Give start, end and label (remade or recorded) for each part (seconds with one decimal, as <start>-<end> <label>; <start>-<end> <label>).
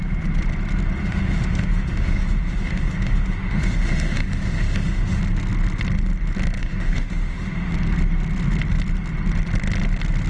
0.0-1.0 recorded; 1.0-5.2 remade; 5.2-6.6 recorded; 6.6-7.7 remade; 7.7-10.3 recorded